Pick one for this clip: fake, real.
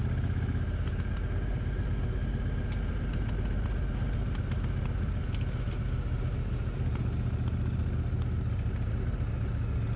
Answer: real